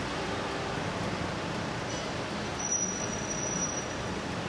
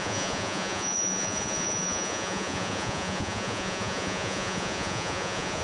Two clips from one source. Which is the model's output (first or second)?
second